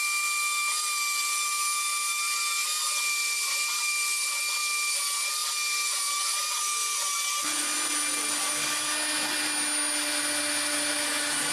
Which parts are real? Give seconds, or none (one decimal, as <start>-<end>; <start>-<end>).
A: 0.0-11.5